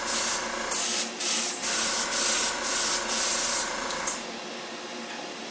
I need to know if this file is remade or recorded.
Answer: recorded